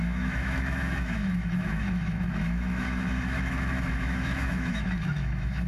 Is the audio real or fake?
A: fake